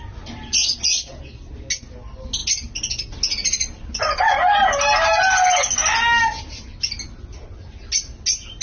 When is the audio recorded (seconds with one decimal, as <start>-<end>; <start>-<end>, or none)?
0.0-0.5; 1.5-8.6